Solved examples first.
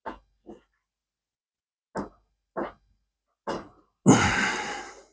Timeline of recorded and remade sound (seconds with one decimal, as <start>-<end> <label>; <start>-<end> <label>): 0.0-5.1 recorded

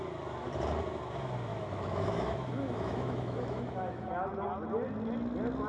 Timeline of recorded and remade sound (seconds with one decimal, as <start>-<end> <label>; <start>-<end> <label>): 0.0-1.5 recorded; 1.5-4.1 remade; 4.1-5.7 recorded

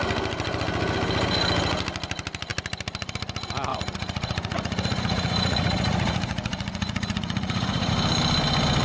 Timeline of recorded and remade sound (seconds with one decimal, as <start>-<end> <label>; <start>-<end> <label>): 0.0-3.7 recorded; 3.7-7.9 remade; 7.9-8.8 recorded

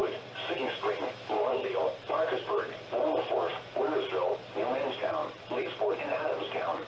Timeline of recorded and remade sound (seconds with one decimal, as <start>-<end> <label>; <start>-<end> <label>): 0.0-6.9 remade